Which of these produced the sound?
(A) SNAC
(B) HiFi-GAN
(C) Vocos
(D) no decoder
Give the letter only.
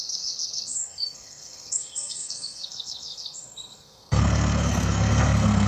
A